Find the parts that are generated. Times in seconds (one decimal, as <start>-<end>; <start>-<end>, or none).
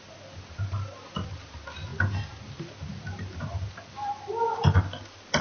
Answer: none